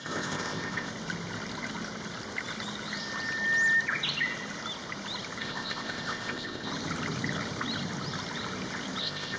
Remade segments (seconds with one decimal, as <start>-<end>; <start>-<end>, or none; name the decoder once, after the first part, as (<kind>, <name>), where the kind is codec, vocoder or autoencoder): 0.0-0.9 (codec, ZipCodec); 5.4-6.7; 9.0-9.4